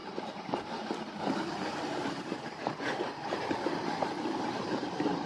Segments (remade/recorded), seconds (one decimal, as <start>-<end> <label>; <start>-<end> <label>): 0.0-5.3 recorded